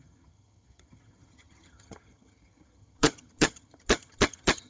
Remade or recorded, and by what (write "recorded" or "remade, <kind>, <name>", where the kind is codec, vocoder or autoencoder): remade, vocoder, HiFi-GAN